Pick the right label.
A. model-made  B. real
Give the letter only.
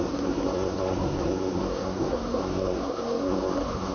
A